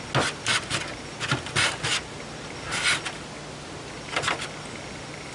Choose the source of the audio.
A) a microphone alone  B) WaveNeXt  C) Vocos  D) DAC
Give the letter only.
A